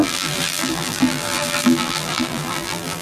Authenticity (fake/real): fake